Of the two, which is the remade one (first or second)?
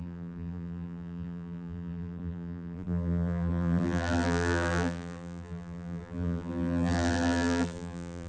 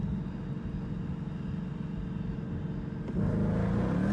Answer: first